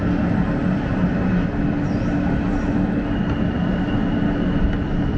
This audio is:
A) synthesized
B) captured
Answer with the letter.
B